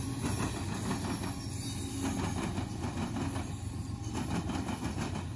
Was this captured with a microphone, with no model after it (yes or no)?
yes